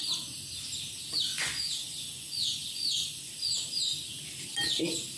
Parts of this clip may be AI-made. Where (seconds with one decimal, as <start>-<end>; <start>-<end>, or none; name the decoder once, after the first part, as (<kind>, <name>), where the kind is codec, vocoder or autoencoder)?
1.3-3.3 (vocoder, Vocos)